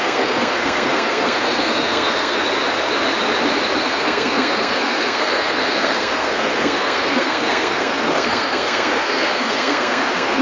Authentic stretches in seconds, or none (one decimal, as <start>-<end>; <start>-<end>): 2.4-3.8